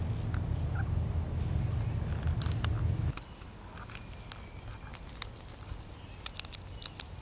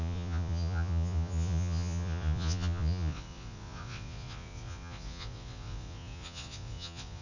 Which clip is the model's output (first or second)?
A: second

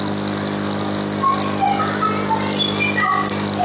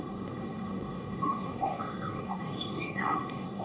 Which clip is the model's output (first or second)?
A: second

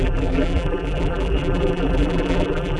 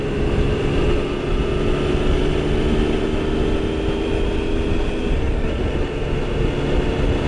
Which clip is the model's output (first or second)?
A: first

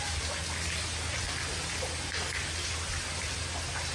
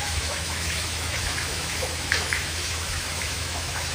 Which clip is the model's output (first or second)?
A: second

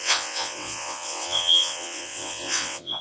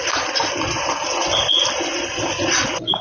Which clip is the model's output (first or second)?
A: first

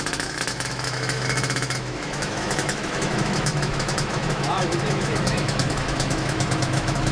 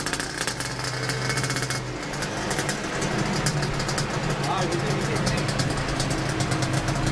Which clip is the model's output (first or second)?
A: first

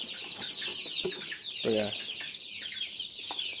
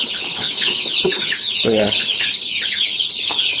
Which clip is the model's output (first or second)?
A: second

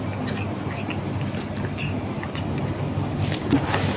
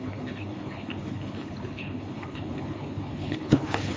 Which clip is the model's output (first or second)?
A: second